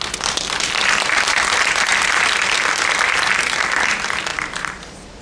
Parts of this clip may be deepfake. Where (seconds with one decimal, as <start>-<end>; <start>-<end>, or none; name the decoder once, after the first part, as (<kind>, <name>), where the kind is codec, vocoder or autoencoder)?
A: 1.9-3.3 (vocoder, BigVGAN v2); 4.3-5.2